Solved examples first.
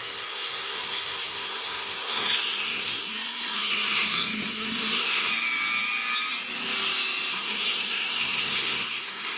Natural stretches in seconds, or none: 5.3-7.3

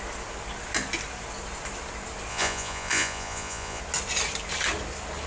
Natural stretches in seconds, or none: 0.0-2.3; 3.8-5.3

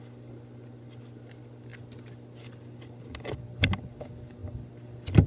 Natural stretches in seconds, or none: 0.0-5.3

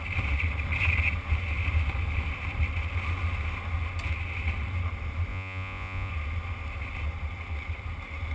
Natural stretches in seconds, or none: 0.0-5.3; 6.1-8.3

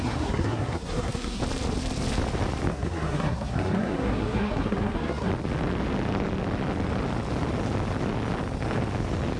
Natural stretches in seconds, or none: 1.4-2.7; 5.3-9.4

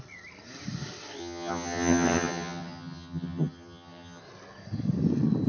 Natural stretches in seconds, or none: 0.0-1.2; 4.2-5.5

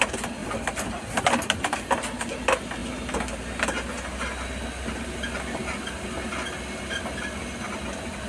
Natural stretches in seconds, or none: 0.0-0.4; 1.9-8.3

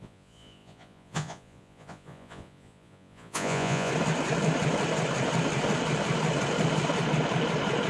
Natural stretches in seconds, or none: 3.9-7.9